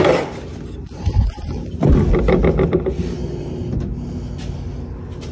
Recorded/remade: recorded